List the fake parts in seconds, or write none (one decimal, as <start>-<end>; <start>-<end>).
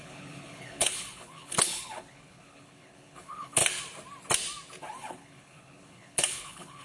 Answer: 0.0-3.6; 5.0-6.8